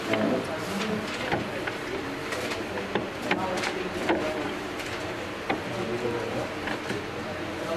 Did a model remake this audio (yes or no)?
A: no